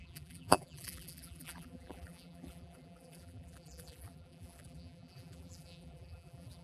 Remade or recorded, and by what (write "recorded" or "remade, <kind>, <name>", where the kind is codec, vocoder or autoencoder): remade, vocoder, BigVGAN v2